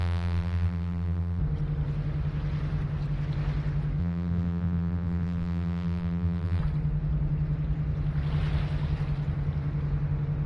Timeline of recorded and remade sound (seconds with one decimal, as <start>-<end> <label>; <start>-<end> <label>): 0.0-1.4 remade; 1.4-4.0 recorded; 4.0-6.6 remade; 6.6-10.5 recorded